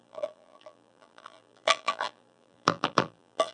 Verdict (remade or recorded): remade